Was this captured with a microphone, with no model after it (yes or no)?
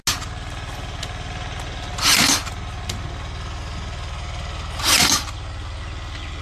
yes